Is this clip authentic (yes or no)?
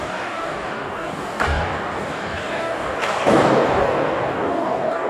no